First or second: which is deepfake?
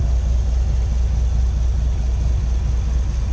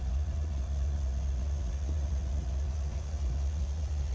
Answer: second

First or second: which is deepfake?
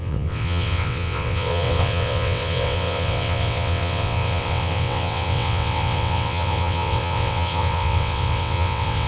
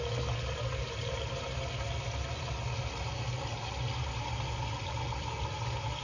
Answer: first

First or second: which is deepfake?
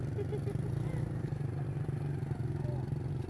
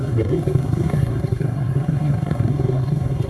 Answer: second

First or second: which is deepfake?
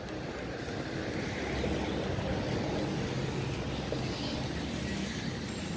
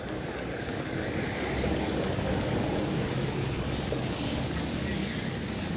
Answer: second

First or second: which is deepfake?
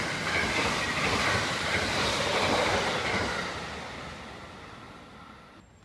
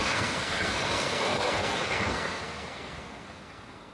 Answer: second